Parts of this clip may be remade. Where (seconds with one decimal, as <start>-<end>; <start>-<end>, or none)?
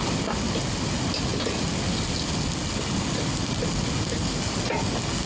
none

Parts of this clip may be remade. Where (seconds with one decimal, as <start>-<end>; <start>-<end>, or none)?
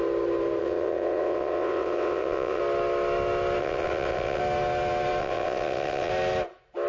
0.6-2.6; 3.6-4.4; 5.2-6.1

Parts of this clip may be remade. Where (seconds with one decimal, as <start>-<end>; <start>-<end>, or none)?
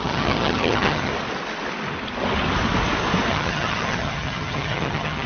0.0-1.1; 3.3-5.3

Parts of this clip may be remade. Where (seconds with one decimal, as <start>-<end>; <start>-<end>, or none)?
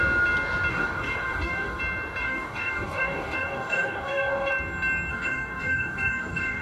0.7-1.8; 2.2-4.5; 5.1-6.6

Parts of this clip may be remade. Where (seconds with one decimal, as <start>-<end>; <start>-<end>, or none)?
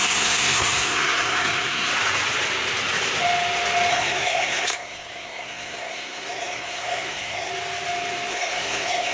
0.0-1.9; 3.9-7.5; 8.3-9.1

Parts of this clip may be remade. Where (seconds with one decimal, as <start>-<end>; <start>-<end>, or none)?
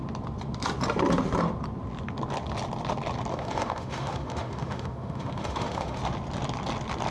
3.3-6.0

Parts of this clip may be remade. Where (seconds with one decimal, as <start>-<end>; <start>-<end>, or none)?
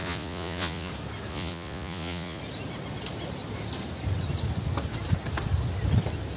0.0-0.9; 1.3-2.4